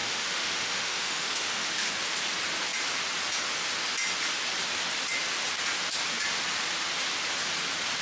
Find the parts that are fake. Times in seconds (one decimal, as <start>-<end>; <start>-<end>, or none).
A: 0.0-1.9